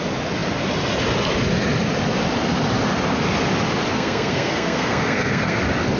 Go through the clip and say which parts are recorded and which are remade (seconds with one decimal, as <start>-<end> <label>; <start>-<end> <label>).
0.0-3.9 recorded; 3.9-5.6 remade; 5.6-6.0 recorded